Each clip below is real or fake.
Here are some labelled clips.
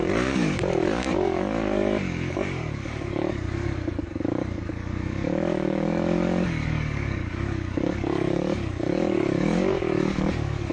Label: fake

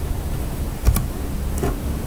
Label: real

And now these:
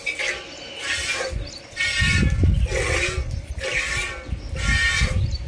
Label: real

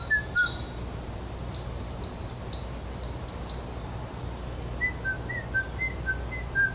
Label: real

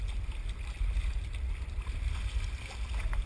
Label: real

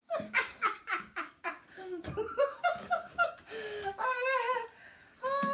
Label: fake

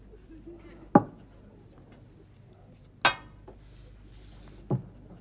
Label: real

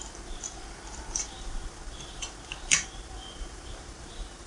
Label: fake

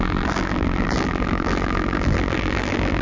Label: fake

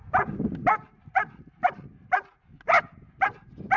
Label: real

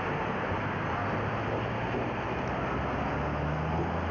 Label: real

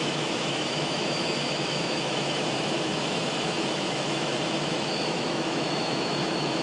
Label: fake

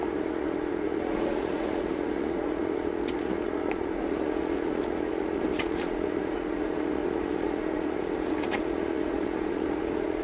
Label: fake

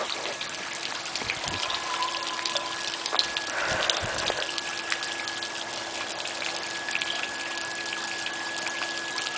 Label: real